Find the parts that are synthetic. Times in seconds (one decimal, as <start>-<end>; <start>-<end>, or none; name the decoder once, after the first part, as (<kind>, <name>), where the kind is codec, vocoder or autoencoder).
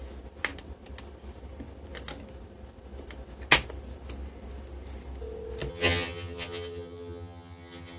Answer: 5.7-8.0 (vocoder, HiFi-GAN)